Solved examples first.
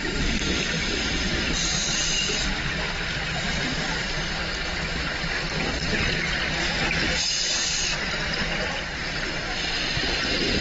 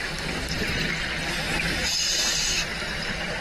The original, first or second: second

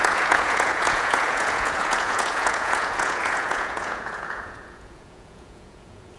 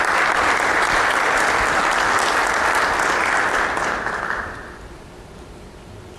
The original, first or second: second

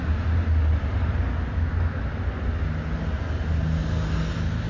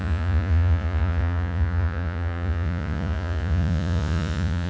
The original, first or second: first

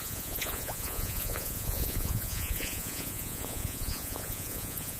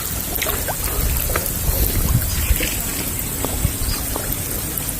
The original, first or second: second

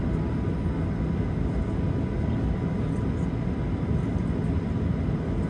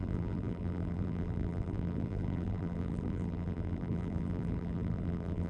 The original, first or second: first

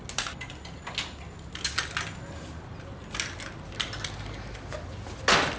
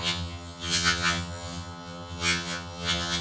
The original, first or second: first